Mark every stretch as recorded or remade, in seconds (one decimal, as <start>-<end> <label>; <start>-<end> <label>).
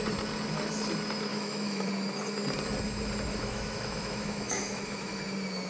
0.0-1.3 recorded; 1.3-1.9 remade; 1.9-3.3 recorded; 3.3-5.2 remade; 5.2-5.7 recorded